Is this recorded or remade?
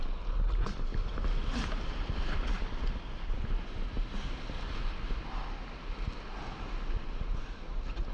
recorded